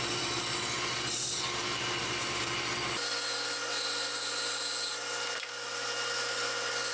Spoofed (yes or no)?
no